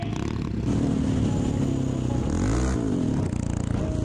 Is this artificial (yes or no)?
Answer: no